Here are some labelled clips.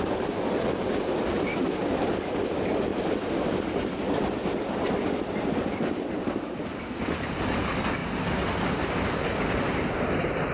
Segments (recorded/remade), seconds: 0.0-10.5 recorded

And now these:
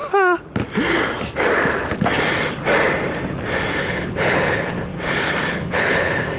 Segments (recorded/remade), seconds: 0.0-3.8 recorded; 3.8-4.9 remade; 4.9-5.5 recorded; 5.5-6.4 remade